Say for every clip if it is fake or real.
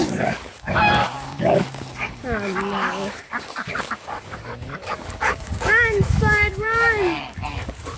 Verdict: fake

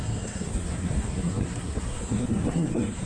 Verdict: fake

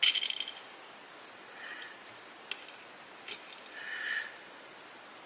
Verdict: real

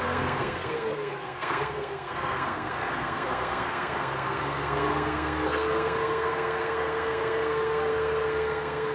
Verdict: fake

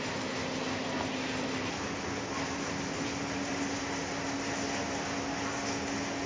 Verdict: real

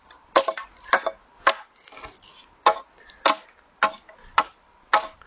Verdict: real